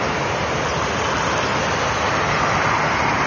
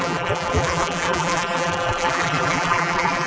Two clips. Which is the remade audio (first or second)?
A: second